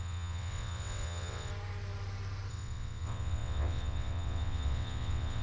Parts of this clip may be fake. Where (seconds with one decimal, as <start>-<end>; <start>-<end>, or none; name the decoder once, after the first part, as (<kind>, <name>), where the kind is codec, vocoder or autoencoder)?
0.0-1.5 (vocoder, WaveNeXt); 2.5-5.4